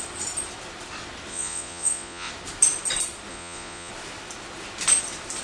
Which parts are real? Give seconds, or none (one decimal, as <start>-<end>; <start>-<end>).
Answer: 0.0-1.3; 2.3-3.3; 3.9-5.4